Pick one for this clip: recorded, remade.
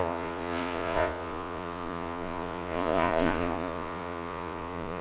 remade